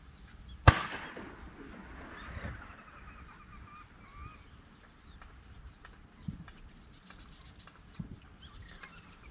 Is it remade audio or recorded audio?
recorded